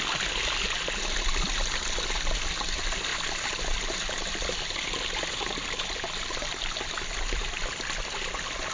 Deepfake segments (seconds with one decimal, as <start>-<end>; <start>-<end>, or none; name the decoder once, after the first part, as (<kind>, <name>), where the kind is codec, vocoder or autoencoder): none